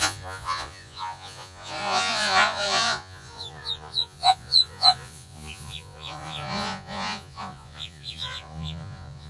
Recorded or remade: remade